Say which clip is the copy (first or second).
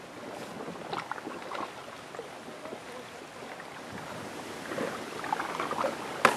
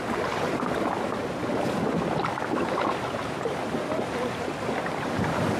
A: second